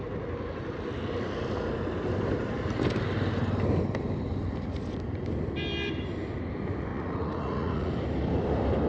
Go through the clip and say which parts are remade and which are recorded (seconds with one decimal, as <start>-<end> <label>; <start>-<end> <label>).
0.0-6.9 recorded; 6.9-7.9 remade; 7.9-8.9 recorded